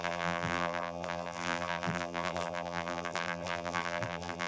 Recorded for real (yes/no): no